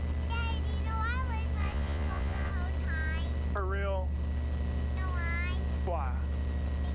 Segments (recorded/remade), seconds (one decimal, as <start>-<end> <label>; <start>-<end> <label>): 0.0-1.6 recorded; 1.6-2.5 remade; 2.5-6.9 recorded